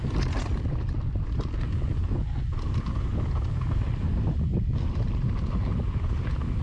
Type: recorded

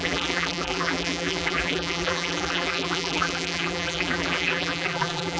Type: remade